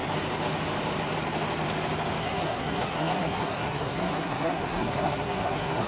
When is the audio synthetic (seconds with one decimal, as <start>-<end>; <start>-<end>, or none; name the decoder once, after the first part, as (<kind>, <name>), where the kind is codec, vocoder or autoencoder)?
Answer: 2.2-5.9 (codec, SNAC)